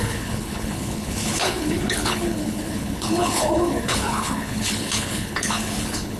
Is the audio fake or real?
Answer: fake